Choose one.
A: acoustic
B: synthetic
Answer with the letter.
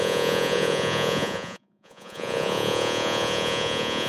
B